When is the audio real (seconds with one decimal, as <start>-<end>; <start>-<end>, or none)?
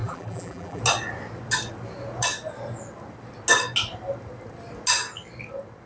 0.8-5.9